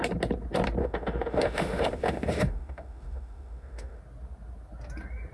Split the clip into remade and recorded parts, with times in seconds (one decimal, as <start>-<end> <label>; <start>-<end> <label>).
0.0-0.8 recorded; 0.8-4.0 remade; 4.0-5.3 recorded